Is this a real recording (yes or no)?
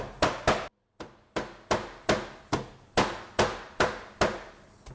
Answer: yes